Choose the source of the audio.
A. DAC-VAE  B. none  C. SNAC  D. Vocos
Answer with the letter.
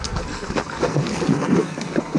C